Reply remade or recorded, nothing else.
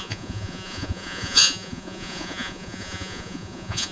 remade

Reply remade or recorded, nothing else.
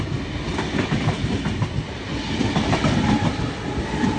recorded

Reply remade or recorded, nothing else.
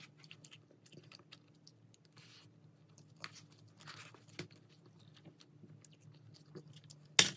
recorded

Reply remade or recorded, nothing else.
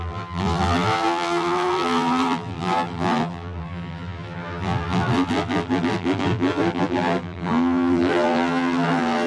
remade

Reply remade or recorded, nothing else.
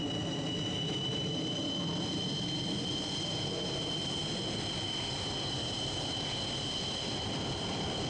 recorded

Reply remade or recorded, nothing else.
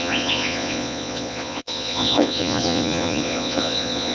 remade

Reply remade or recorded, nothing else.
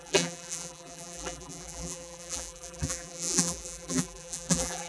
remade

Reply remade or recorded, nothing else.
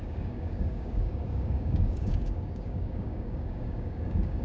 remade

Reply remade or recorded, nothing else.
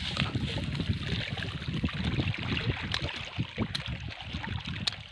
recorded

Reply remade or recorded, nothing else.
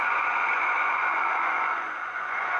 remade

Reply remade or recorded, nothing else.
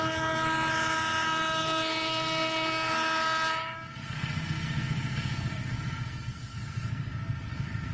remade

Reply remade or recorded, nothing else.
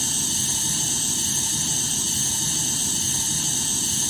recorded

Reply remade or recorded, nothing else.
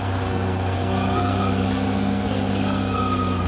remade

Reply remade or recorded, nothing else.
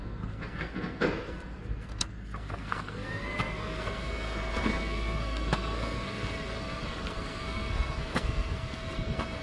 remade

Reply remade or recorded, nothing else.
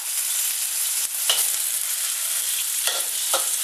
recorded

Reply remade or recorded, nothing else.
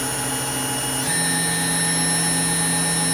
recorded